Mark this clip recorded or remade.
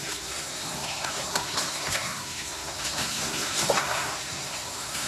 remade